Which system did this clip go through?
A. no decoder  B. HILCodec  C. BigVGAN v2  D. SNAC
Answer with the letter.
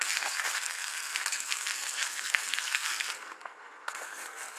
D